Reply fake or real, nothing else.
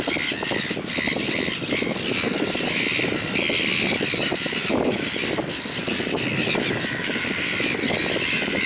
real